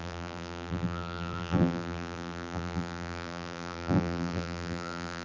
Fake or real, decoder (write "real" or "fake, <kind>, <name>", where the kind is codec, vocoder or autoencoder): fake, vocoder, BigVGAN v2